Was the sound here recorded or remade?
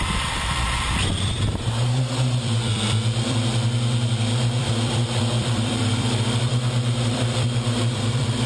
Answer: remade